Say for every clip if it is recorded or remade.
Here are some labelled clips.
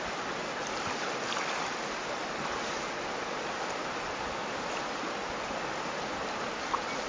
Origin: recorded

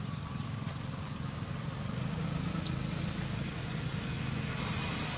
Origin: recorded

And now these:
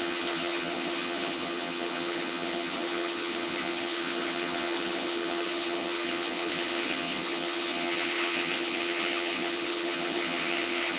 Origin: remade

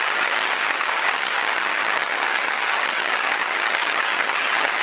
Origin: remade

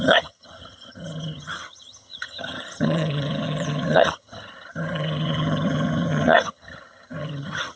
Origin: remade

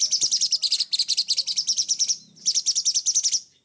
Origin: recorded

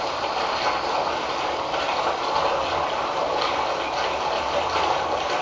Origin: recorded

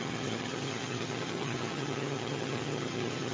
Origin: remade